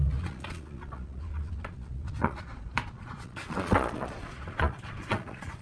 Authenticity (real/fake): fake